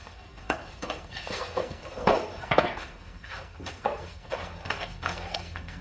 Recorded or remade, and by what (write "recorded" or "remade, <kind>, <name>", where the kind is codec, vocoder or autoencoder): remade, codec, SNAC